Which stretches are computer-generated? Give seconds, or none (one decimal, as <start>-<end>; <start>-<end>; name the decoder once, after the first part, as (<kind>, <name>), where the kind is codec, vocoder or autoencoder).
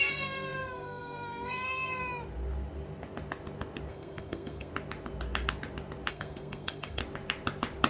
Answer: 0.0-1.9 (codec, SNAC); 3.9-4.7; 6.1-7.0